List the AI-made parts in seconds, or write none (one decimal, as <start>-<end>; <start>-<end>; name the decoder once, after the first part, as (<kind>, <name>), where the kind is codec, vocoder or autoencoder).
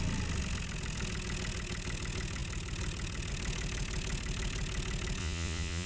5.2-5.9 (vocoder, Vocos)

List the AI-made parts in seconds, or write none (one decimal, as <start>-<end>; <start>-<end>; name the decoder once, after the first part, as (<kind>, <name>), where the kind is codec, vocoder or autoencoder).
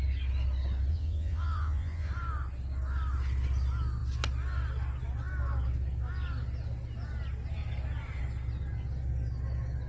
0.9-2.1 (vocoder, Vocos)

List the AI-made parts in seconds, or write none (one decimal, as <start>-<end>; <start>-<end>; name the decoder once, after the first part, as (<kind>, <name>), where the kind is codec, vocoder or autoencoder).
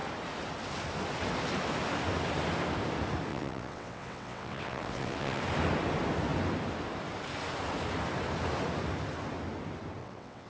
3.3-5.4 (vocoder, WaveNeXt); 10.0-10.5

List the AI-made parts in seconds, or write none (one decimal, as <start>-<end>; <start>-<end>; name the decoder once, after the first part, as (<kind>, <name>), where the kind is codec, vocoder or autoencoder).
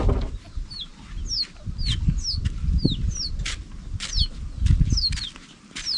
none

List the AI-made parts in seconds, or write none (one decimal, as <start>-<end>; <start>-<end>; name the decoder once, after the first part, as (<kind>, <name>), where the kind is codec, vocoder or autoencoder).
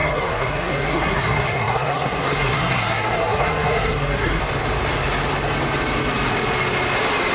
0.0-4.4 (codec, SNAC)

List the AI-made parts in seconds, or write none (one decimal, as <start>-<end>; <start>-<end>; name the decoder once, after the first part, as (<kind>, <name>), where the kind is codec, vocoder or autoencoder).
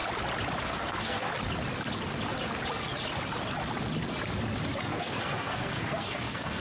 0.6-1.3 (codec, SNAC); 4.8-6.6